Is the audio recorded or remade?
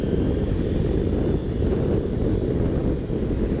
recorded